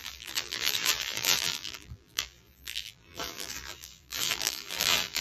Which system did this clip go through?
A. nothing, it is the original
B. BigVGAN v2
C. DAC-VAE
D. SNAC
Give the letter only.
B